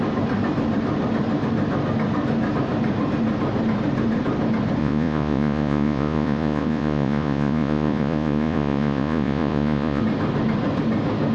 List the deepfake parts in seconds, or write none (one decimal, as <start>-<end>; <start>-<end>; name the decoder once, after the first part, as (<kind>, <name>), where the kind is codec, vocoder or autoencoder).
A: 4.8-10.0 (vocoder, Vocos)